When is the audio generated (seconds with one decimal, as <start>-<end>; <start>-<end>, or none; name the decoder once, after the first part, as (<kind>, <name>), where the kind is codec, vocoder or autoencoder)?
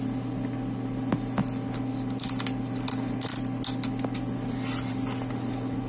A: none